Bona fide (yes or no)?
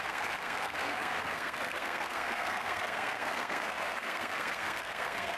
no